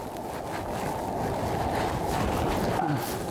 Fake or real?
real